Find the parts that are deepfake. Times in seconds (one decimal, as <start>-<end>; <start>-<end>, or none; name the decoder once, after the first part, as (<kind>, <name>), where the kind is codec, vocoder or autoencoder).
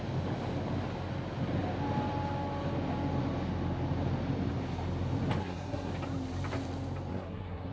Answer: 5.4-5.9 (codec, SNAC); 7.1-7.7